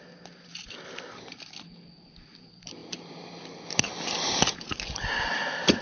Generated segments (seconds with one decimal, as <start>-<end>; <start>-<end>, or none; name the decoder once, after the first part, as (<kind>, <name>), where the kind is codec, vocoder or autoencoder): none